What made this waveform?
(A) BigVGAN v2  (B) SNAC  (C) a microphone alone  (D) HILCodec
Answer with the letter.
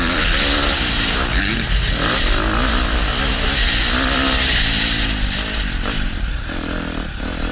C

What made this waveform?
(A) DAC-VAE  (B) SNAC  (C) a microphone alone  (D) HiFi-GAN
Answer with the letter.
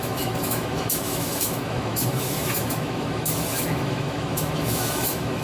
A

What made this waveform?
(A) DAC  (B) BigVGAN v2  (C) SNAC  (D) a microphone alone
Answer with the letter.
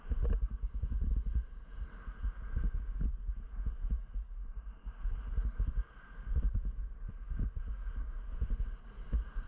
D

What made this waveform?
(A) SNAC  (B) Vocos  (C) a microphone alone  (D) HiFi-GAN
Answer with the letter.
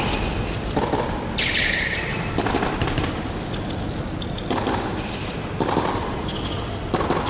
C